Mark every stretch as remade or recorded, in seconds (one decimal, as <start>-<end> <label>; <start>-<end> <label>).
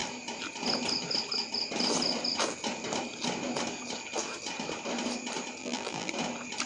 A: 0.0-5.6 recorded; 5.6-6.1 remade; 6.1-6.7 recorded